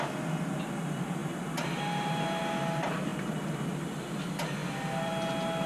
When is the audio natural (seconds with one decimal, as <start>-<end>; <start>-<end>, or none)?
0.0-5.7